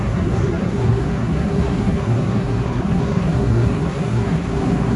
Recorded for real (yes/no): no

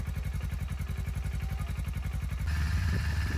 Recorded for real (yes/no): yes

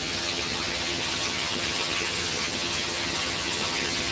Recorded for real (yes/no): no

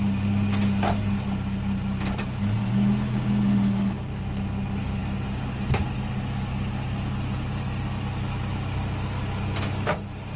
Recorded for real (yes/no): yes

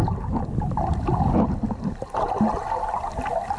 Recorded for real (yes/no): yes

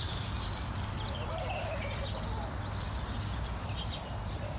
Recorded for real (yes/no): yes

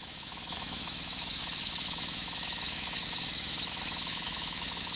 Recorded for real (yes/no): no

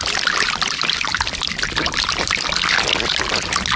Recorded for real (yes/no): yes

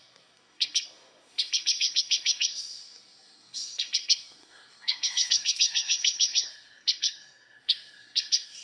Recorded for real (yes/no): no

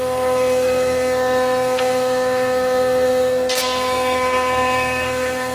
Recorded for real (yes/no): no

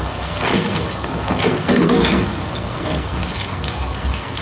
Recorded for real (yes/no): no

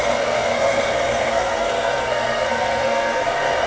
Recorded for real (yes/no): no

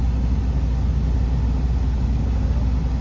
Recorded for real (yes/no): yes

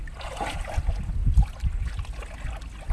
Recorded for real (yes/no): yes